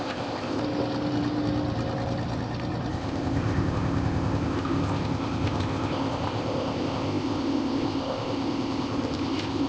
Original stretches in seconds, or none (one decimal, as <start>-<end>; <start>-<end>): 0.6-2.9